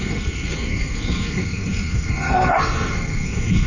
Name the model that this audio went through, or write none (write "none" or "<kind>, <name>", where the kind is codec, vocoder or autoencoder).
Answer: codec, SNAC